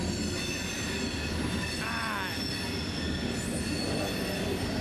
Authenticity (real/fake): real